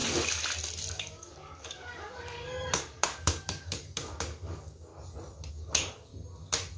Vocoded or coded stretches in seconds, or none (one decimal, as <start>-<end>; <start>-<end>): 0.9-4.9; 5.5-6.1